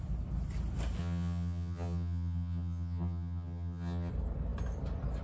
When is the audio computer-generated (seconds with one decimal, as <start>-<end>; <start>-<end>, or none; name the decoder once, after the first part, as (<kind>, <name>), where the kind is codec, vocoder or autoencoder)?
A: 1.0-4.1 (vocoder, HiFi-GAN)